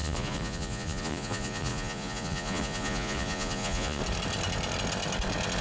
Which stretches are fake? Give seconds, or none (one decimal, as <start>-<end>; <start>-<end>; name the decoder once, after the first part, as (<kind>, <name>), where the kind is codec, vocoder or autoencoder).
0.0-4.0 (vocoder, Vocos)